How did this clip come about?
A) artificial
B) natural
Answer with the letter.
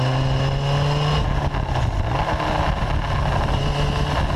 B